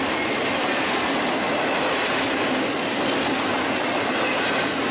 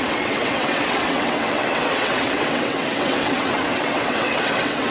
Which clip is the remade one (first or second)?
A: second